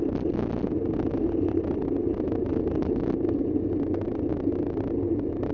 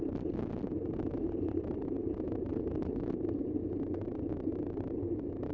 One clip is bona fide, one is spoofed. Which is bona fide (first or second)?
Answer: first